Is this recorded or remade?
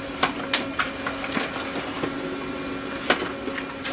recorded